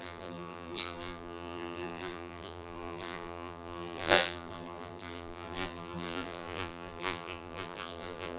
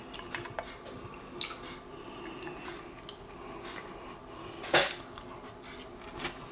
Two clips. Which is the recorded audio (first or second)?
second